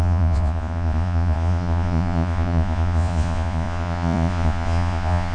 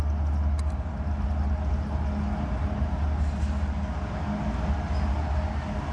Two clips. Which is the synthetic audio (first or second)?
first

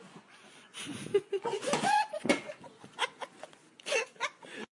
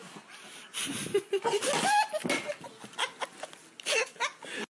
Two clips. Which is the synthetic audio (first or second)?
first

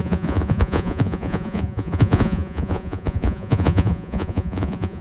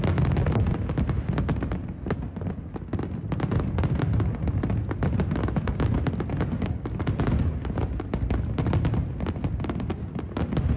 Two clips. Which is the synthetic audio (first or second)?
first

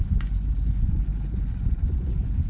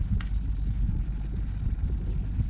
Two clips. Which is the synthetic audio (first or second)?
first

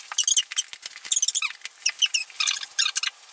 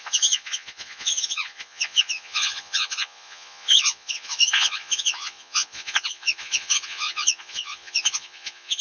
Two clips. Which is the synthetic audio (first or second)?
second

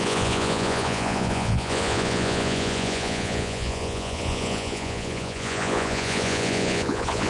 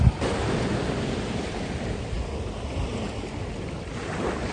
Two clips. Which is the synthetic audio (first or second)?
first